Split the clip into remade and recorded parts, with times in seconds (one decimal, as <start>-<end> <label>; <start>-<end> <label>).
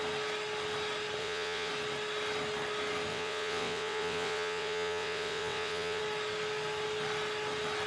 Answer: 0.0-1.2 recorded; 1.2-1.7 remade; 1.7-3.1 recorded; 3.1-6.0 remade; 6.0-7.9 recorded